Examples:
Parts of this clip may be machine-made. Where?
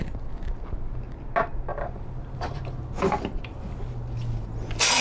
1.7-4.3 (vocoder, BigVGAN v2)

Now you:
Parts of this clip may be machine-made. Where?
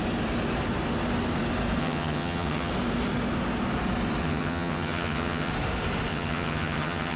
1.8-2.7 (vocoder, HiFi-GAN); 4.2-5.5; 6.1-7.2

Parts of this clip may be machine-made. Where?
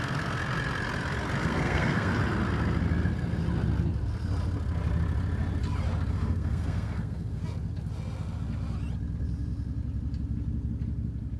0.0-0.4 (codec, SNAC); 1.4-2.1; 6.1-7.4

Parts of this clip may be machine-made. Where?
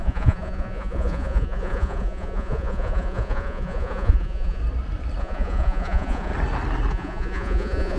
0.0-4.6 (vocoder, Vocos); 5.2-6.3; 6.9-8.0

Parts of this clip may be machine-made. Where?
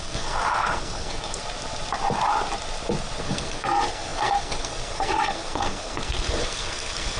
0.0-1.4 (codec, SNAC); 3.2-7.2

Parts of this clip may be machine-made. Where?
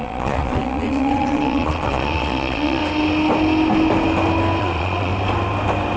0.0-2.8 (vocoder, Vocos); 4.6-5.1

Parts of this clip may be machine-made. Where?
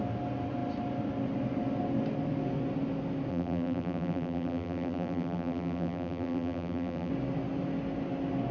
3.3-7.1 (vocoder, BigVGAN v2)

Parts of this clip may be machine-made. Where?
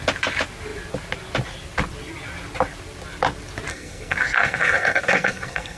3.7-5.8 (codec, SNAC)